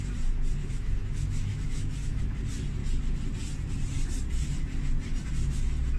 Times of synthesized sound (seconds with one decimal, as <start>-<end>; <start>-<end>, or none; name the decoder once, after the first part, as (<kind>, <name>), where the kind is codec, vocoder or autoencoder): 0.6-2.2 (autoencoder, DAC-VAE)